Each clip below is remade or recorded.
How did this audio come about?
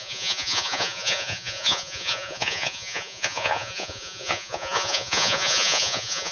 remade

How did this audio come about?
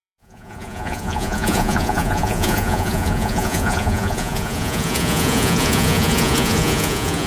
remade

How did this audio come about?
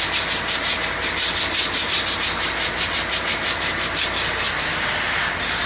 recorded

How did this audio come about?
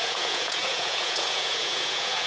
remade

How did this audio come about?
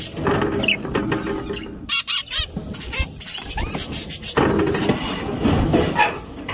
recorded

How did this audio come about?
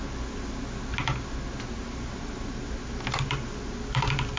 recorded